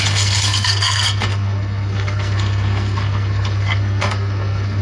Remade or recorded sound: remade